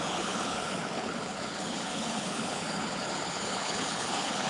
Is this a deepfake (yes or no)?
yes